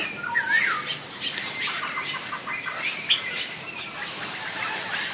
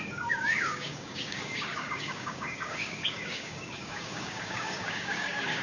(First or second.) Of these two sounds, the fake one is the second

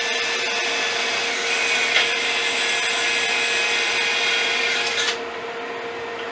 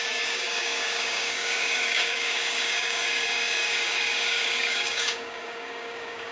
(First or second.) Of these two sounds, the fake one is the second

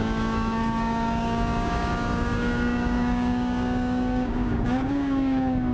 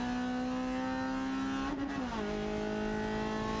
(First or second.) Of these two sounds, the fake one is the first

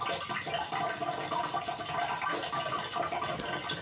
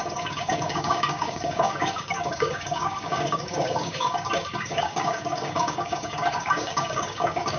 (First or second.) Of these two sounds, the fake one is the second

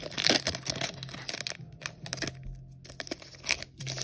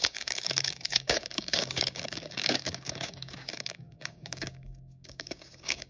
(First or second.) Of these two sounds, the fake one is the second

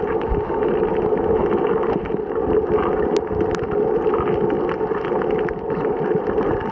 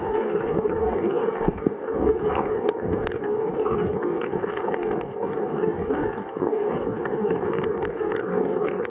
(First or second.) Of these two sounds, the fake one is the second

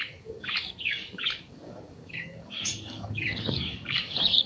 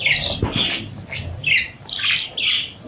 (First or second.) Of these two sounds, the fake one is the first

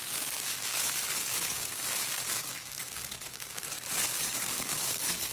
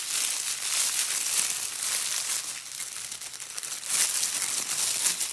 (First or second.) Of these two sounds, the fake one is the first